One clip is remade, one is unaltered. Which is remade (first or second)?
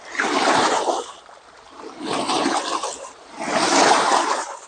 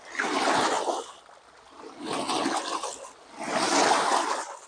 first